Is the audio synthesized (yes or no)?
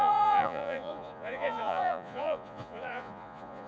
yes